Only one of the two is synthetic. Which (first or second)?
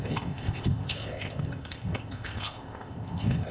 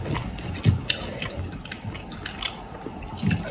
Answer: first